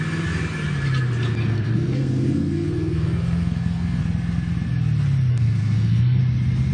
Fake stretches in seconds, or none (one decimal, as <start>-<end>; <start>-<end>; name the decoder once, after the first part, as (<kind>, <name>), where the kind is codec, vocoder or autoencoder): 1.4-4.0 (codec, SNAC); 5.3-6.2